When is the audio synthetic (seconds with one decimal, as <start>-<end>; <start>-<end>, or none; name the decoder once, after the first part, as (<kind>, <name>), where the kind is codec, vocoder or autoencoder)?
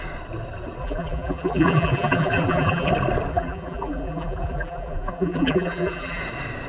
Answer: 0.8-2.9 (vocoder, BigVGAN v2); 3.3-6.2